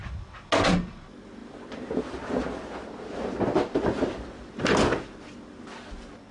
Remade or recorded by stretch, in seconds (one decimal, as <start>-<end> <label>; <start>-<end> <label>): 0.0-6.3 recorded